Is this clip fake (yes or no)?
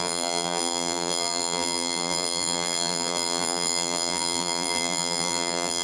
yes